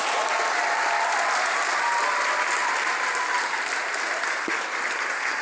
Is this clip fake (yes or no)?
no